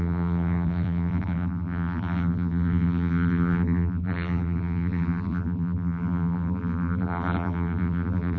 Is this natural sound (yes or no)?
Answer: no